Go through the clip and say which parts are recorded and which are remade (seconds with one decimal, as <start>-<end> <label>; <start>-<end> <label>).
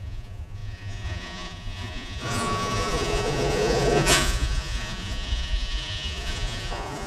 0.0-7.1 remade